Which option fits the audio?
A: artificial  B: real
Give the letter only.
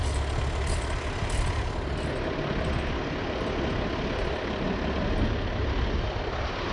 B